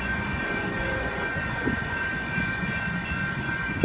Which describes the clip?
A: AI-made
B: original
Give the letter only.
A